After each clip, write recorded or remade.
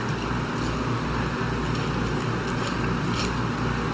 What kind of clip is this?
recorded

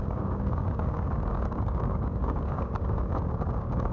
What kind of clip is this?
remade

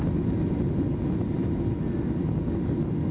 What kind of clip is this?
recorded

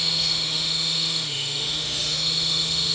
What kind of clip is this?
remade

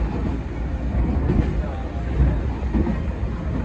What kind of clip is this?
recorded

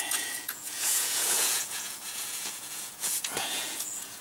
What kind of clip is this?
remade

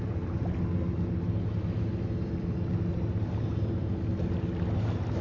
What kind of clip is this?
recorded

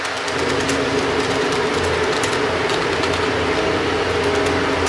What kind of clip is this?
remade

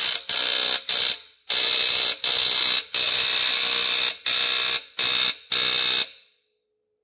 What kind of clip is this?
recorded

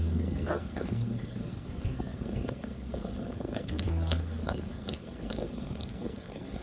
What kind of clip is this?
remade